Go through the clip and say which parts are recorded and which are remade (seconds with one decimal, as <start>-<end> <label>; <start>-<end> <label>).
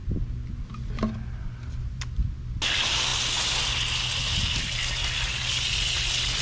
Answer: 0.0-6.4 recorded